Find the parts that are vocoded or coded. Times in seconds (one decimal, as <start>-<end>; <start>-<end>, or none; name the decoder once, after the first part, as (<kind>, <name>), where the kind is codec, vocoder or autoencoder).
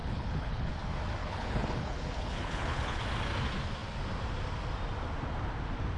0.0-0.7 (codec, HILCodec); 1.2-3.0